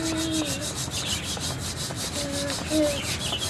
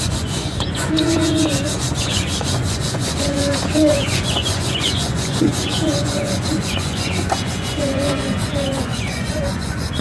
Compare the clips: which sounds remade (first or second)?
second